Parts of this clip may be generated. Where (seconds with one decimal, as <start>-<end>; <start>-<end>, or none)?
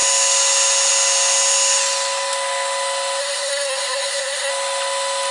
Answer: 3.2-4.5